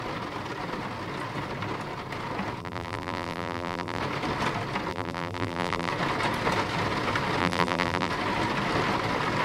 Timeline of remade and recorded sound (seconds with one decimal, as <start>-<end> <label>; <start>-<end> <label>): 0.0-2.6 recorded; 2.6-4.0 remade; 4.0-4.9 recorded; 4.9-5.9 remade; 5.9-7.4 recorded; 7.4-8.1 remade; 8.1-9.4 recorded